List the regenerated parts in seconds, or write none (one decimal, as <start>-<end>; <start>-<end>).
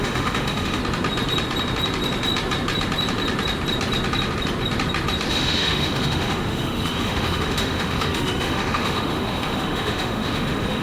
0.0-0.8; 5.3-10.8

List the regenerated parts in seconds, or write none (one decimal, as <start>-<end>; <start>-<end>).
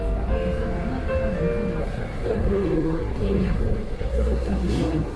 1.8-5.2